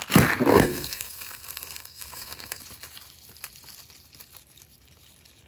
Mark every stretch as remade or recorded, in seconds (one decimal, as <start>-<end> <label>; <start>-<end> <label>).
0.0-0.5 recorded; 0.5-2.6 remade; 2.6-5.5 recorded